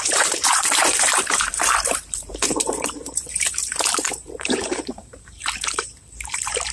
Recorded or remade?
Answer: remade